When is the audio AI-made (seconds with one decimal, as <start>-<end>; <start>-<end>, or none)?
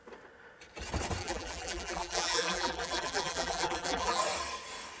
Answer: 1.2-4.2